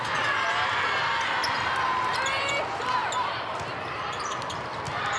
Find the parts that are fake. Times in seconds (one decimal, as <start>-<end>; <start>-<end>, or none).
none